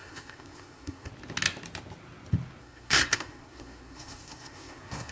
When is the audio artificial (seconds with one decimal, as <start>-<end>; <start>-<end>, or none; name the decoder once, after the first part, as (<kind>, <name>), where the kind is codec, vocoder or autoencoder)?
0.0-1.1 (codec, SNAC); 2.6-5.1